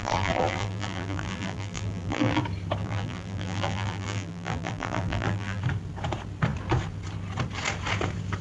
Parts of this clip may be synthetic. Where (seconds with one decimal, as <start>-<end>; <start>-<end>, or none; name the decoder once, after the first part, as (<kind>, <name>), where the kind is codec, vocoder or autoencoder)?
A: 0.0-2.4 (vocoder, BigVGAN v2); 2.8-5.6